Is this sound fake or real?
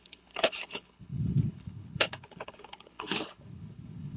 fake